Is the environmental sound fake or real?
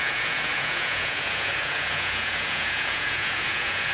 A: fake